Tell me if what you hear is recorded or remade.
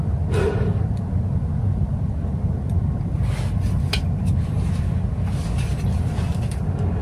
recorded